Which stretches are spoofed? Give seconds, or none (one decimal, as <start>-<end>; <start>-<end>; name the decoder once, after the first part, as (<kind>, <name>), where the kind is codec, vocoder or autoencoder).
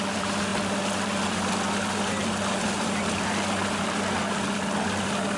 none